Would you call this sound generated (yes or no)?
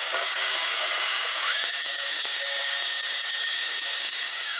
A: yes